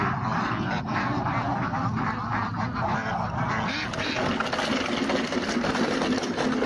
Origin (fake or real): real